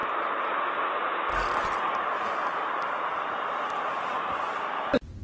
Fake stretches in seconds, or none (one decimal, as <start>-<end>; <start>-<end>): none